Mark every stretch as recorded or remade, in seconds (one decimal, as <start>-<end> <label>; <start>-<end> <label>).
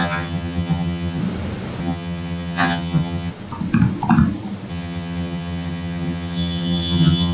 0.0-1.2 remade; 1.2-1.8 recorded; 1.8-3.3 remade; 3.3-4.7 recorded; 4.7-7.3 remade